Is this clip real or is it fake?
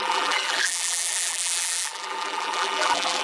fake